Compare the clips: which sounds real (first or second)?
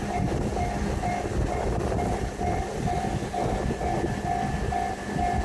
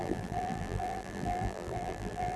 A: first